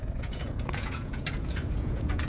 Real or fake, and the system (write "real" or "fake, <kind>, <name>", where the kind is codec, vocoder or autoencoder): fake, vocoder, Vocos